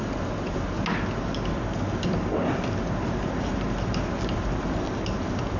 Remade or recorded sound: recorded